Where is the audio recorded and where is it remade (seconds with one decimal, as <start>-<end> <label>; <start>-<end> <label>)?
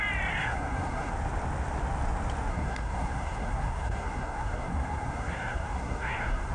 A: 0.0-0.4 recorded; 0.4-1.1 remade; 1.1-2.5 recorded; 2.5-6.5 remade